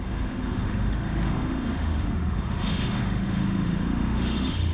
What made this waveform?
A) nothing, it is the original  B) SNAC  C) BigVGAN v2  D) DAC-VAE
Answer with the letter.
D